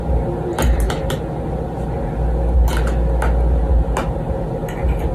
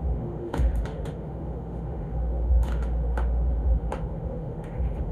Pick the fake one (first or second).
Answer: second